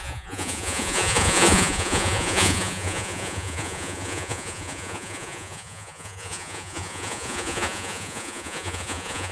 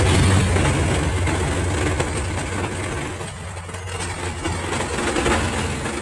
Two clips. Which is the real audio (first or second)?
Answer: second